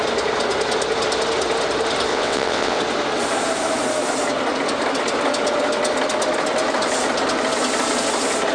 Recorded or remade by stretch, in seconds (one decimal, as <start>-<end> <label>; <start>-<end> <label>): 0.0-2.1 recorded; 2.1-2.8 remade; 2.8-8.5 recorded